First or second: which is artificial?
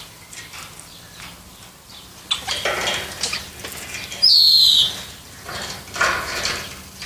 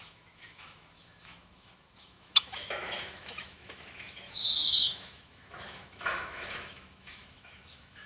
second